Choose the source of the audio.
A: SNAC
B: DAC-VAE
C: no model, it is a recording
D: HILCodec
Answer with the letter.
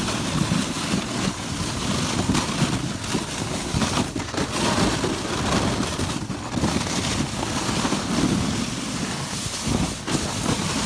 C